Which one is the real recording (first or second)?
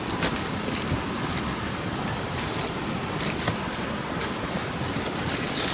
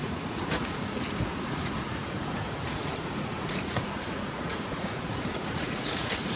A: first